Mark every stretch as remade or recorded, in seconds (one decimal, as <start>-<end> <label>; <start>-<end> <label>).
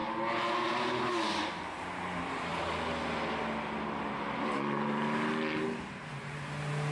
0.0-6.9 recorded